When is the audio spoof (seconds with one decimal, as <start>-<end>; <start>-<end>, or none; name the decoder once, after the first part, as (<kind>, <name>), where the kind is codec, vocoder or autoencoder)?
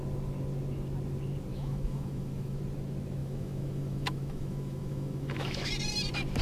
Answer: 1.5-2.6 (autoencoder, DAC-VAE); 3.2-5.7